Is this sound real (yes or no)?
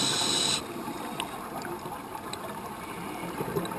yes